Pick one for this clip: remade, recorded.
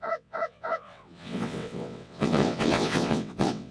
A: remade